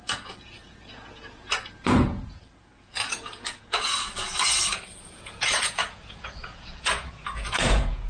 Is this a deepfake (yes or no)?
yes